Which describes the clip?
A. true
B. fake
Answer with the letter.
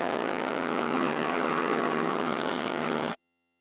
B